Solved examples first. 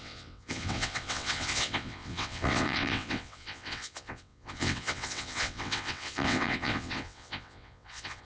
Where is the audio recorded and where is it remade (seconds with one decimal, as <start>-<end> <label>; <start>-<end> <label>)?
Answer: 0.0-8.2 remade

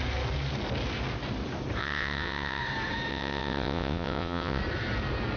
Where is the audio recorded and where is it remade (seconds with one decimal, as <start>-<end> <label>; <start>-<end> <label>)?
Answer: 0.0-1.8 recorded; 1.8-2.6 remade; 2.6-3.1 recorded; 3.1-4.6 remade; 4.6-5.4 recorded

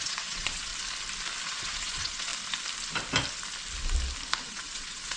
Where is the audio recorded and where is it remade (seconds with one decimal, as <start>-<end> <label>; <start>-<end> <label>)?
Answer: 0.0-0.7 remade; 0.7-1.4 recorded; 1.4-2.3 remade; 2.3-4.4 recorded; 4.4-5.2 remade

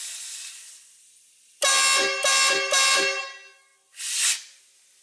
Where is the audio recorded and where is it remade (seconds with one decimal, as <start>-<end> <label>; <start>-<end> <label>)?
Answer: 0.0-5.0 recorded

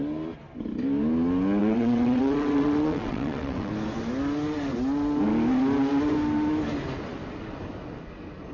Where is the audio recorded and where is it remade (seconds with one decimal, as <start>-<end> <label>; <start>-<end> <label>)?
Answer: 0.0-1.6 recorded; 1.6-3.7 remade; 3.7-8.5 recorded